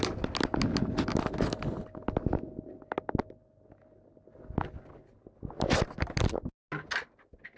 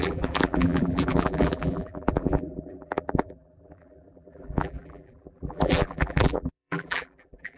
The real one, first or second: first